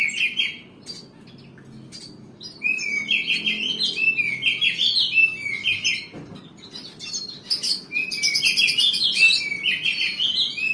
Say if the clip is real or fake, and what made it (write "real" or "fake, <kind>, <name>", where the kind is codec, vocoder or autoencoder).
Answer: real